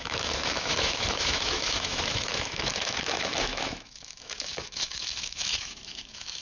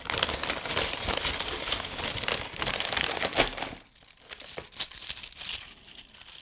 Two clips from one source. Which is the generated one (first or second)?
first